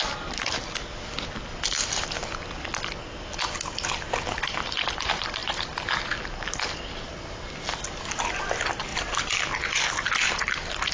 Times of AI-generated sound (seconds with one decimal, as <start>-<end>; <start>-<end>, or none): none